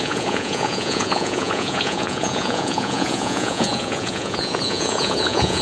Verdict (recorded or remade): remade